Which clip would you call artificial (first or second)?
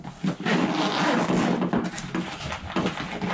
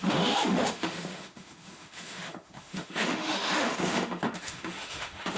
second